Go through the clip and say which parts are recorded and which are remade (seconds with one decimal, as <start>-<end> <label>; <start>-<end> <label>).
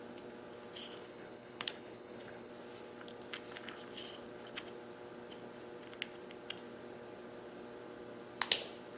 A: 0.0-1.0 recorded; 1.0-2.5 remade; 2.5-9.0 recorded